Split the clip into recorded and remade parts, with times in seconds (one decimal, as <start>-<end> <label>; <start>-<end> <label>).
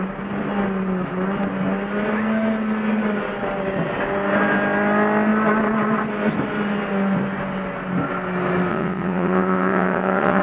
0.0-8.7 recorded; 8.7-10.4 remade